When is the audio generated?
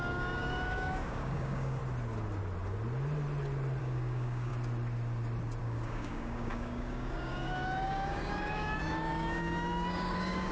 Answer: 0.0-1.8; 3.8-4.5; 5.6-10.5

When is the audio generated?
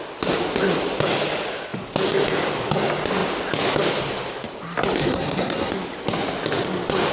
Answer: 5.0-5.7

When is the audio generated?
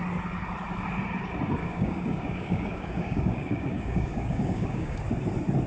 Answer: 1.6-5.0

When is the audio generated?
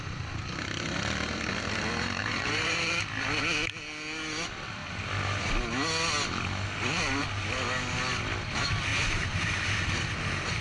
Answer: 2.2-3.0; 4.8-5.5; 8.9-9.5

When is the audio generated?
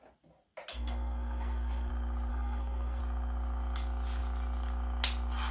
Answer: 0.7-1.9; 2.3-3.0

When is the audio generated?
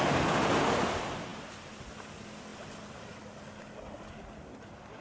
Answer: none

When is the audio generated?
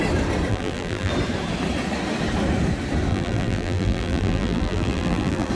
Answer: 0.5-1.1; 3.1-5.5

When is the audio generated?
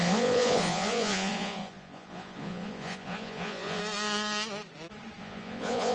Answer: 0.0-3.8; 5.2-5.9